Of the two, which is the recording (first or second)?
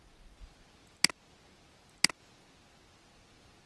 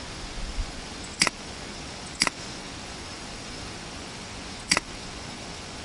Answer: first